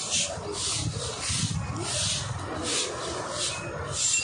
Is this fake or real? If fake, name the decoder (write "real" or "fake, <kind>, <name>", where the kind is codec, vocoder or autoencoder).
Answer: real